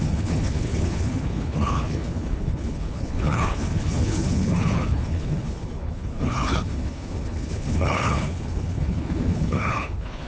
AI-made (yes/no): yes